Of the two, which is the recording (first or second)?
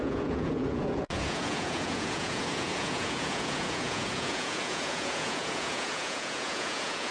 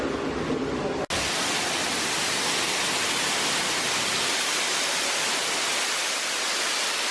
second